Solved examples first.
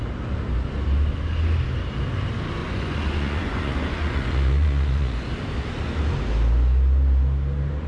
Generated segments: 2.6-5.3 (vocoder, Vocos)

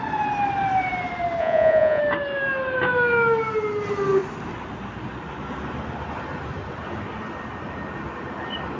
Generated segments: 1.4-2.0 (vocoder, Vocos)